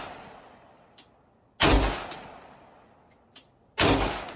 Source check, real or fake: real